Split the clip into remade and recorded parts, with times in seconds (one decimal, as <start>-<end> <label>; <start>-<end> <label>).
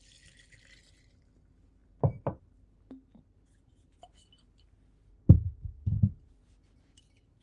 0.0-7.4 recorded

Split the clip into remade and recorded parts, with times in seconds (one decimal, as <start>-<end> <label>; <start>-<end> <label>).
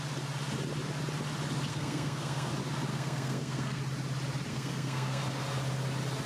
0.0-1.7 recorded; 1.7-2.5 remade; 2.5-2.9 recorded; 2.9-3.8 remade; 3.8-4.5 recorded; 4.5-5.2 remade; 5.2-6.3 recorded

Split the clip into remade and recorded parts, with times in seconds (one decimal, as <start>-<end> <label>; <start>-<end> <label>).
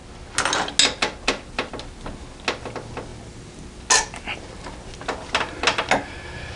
0.0-6.6 recorded